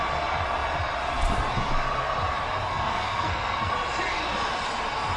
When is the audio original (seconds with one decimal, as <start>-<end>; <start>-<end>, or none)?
0.0-2.7; 3.7-5.2

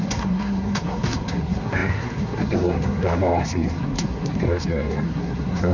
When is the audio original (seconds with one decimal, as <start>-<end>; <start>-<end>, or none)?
none

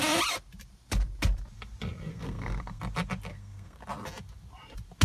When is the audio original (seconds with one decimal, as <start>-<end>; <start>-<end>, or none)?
0.0-2.1; 2.8-3.3; 3.8-5.0

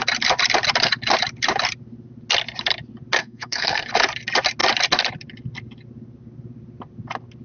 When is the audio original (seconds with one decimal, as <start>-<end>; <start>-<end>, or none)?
0.0-3.2; 3.9-7.4

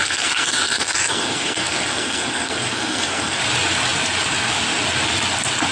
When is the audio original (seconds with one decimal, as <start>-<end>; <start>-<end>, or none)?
3.4-5.7

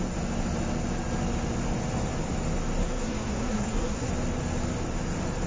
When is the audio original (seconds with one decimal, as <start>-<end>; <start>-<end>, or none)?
0.0-2.8; 4.1-5.5

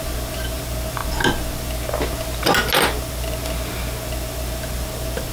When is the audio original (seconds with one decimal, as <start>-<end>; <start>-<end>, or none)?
0.0-5.3

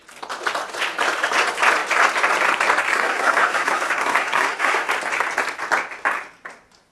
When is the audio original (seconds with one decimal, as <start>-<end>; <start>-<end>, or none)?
0.0-2.9; 4.9-6.9